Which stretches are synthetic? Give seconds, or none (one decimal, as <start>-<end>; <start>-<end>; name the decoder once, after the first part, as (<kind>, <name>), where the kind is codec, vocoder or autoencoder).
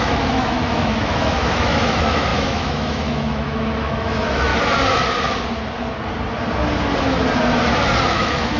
0.0-4.5 (autoencoder, DAC-VAE); 8.0-8.6